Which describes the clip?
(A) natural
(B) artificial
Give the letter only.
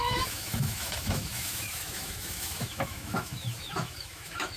B